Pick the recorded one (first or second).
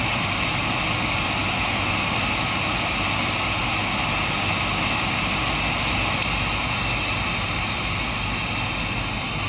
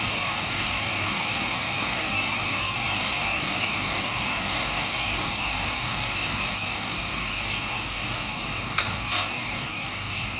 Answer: first